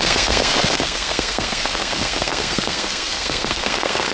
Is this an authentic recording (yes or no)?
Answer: no